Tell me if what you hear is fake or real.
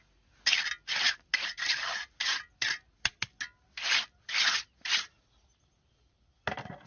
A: real